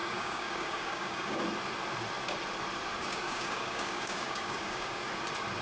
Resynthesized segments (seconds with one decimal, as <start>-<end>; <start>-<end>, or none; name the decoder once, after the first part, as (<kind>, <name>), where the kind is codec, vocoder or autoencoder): 0.0-1.4 (codec, DAC); 3.0-5.1